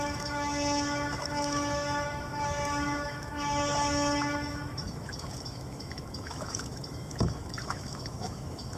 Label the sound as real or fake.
fake